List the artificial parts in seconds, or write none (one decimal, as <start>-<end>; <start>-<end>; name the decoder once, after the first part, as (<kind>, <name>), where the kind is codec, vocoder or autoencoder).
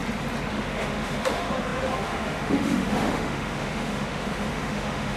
0.5-5.2 (autoencoder, DAC-VAE)